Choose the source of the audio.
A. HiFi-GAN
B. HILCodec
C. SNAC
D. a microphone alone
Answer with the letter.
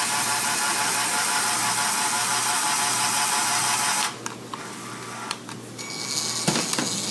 D